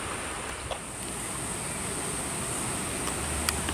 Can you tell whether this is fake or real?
fake